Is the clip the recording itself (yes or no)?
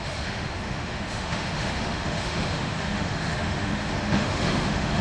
no